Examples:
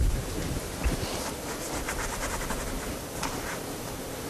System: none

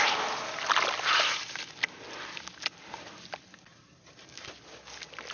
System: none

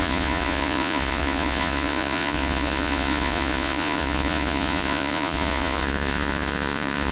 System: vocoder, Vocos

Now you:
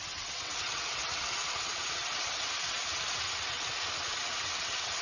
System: vocoder, WaveNeXt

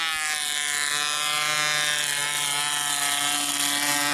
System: none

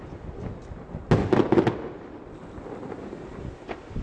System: none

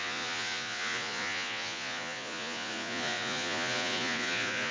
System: vocoder, Vocos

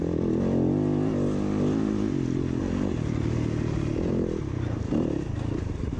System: none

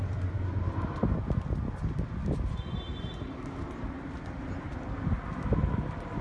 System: none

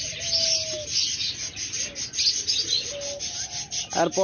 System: none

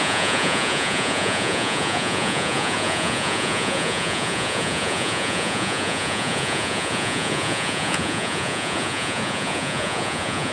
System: vocoder, Vocos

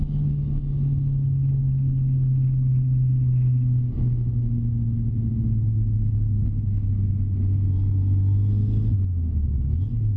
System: none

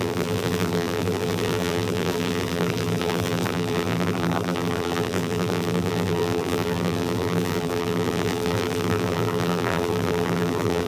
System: vocoder, BigVGAN v2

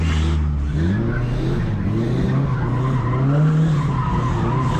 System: none